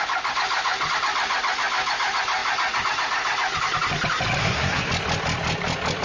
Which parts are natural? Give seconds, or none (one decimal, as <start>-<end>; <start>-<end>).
0.0-4.4; 4.9-6.0

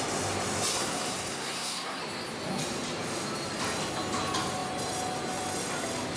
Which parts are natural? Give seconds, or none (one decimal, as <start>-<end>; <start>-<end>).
0.0-0.7; 2.0-6.2

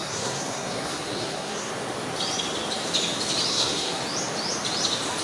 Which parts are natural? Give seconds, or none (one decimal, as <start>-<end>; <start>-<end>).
1.7-3.5; 4.0-5.2

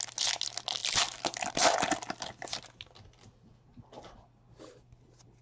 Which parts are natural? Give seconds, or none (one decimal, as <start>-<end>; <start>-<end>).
0.0-5.4

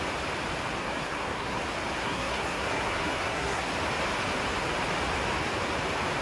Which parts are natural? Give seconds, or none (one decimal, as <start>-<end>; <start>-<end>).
0.0-0.8; 1.6-2.0; 3.7-6.2

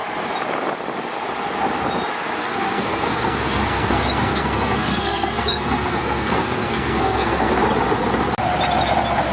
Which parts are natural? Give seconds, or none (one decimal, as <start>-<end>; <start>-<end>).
0.0-2.4; 7.5-9.3

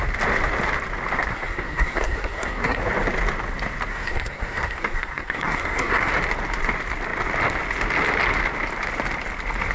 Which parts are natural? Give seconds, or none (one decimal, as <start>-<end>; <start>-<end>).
0.0-1.3; 2.8-3.9; 6.1-9.7

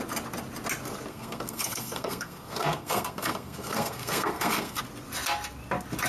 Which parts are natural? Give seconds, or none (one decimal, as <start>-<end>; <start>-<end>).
0.0-1.1; 4.8-6.1